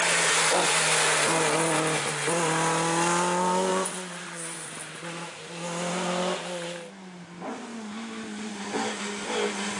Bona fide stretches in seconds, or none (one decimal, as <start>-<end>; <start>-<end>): 0.0-3.7; 4.7-9.8